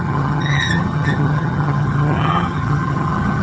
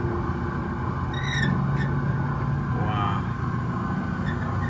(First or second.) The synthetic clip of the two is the first